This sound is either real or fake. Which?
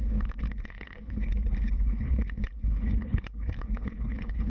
fake